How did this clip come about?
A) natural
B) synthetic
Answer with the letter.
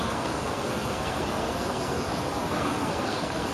B